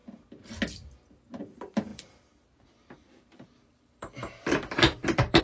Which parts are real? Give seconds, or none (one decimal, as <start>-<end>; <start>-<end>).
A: 0.0-1.4